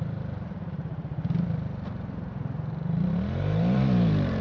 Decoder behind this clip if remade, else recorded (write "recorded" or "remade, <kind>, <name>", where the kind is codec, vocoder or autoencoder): remade, vocoder, BigVGAN v2